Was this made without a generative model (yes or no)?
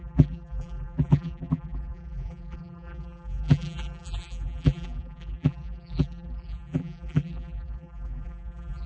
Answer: no